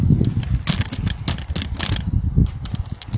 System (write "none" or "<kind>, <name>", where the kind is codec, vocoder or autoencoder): none